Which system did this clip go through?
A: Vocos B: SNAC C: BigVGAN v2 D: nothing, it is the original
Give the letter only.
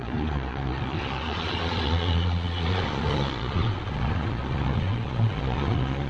A